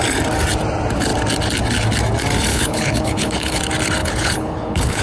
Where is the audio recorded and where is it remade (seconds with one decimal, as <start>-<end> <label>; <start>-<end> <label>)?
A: 0.0-2.5 recorded; 2.5-3.6 remade; 3.6-4.0 recorded; 4.0-5.0 remade